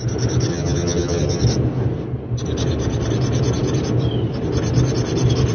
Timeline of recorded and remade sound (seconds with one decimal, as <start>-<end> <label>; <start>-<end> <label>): 0.0-0.5 recorded; 0.5-1.4 remade; 1.4-5.5 recorded